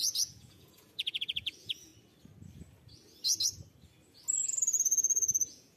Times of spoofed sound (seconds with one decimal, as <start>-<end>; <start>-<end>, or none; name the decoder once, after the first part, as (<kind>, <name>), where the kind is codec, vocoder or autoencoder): 0.0-1.9 (vocoder, Vocos); 4.4-5.8